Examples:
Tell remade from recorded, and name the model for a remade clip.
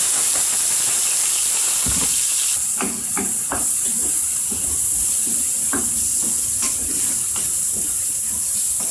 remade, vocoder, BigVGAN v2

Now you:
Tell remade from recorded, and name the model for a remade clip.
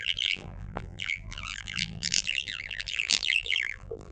remade, vocoder, BigVGAN v2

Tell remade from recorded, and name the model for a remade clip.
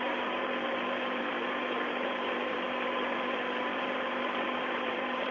remade, vocoder, BigVGAN v2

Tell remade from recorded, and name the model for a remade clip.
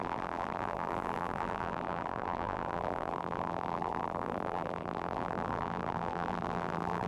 remade, vocoder, BigVGAN v2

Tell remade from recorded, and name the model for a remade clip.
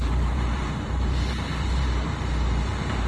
remade, vocoder, BigVGAN v2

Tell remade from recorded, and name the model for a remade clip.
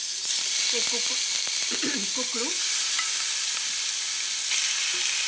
recorded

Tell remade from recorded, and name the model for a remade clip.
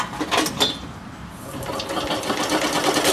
recorded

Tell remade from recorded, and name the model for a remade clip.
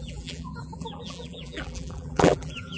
remade, vocoder, BigVGAN v2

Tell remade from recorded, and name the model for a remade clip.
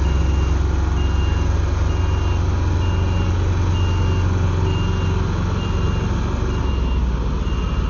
recorded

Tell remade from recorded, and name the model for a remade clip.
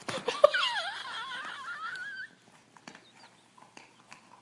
recorded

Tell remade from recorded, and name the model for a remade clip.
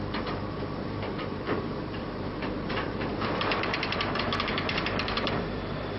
remade, vocoder, BigVGAN v2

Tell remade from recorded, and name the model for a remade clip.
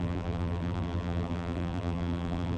remade, vocoder, BigVGAN v2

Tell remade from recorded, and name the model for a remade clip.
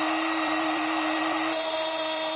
remade, vocoder, BigVGAN v2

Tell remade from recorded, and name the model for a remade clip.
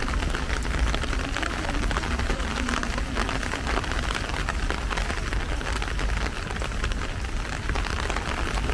recorded